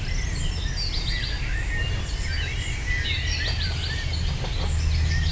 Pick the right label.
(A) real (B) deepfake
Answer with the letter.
A